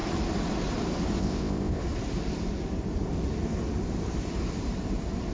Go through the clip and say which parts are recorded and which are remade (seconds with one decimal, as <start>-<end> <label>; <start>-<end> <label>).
0.0-1.2 recorded; 1.2-1.8 remade; 1.8-5.3 recorded